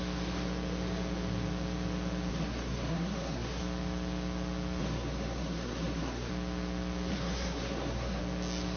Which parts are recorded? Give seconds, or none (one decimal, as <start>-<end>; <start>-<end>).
0.0-2.3; 3.6-4.8; 6.3-7.1; 8.2-8.8